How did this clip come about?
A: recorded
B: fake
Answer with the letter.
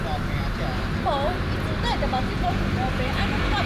A